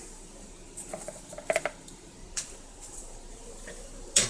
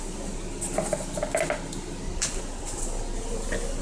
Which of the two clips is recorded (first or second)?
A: second